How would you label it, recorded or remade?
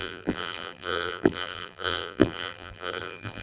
remade